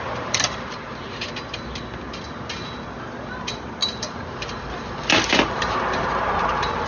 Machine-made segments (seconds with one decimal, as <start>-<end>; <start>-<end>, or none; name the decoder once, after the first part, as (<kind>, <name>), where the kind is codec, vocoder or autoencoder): 0.0-1.3 (vocoder, BigVGAN v2); 3.8-6.9